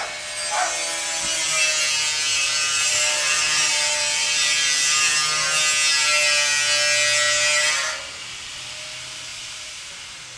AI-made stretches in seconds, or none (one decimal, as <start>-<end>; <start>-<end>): 2.3-5.1; 9.3-9.9